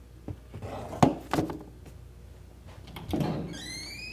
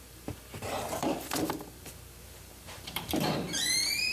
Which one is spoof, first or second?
second